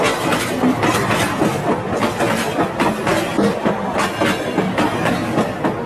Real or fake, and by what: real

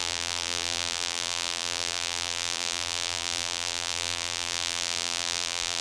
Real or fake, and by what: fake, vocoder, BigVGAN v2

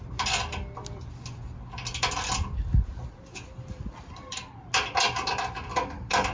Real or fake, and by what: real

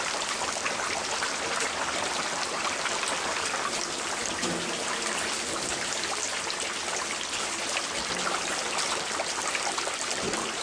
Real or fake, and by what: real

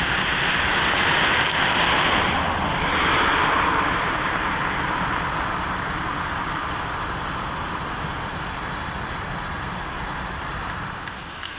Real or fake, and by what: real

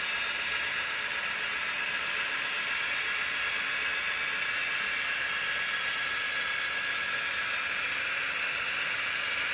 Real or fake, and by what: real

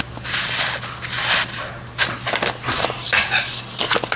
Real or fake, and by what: real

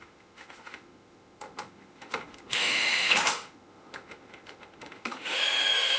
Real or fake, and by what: fake, autoencoder, DAC-VAE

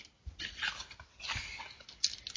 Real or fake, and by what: real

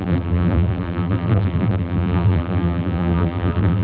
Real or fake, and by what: fake, vocoder, BigVGAN v2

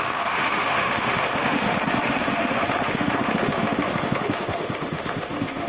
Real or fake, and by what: fake, autoencoder, DAC-VAE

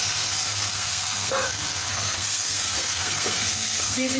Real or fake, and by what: fake, codec, SNAC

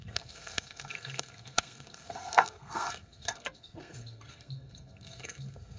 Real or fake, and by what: fake, codec, SNAC